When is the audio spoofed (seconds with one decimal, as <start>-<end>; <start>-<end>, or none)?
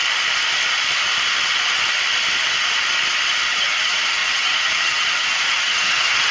3.5-6.3